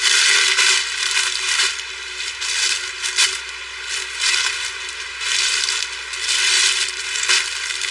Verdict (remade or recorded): recorded